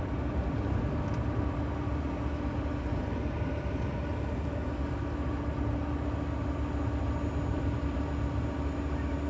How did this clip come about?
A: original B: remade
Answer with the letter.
A